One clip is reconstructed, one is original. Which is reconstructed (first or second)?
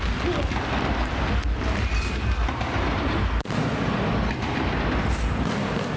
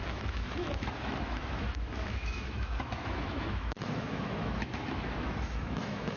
second